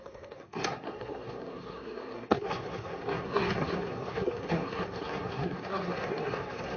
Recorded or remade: remade